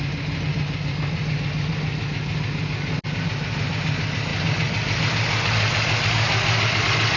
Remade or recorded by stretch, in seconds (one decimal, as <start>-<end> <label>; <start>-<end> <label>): 0.0-7.2 recorded